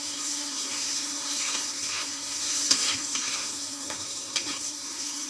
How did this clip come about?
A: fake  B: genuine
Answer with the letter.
A